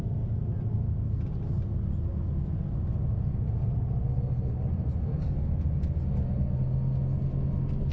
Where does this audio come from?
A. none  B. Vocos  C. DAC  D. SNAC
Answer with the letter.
A